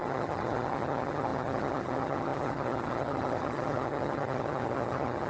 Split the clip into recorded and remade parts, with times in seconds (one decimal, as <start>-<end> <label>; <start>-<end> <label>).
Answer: 0.0-5.3 remade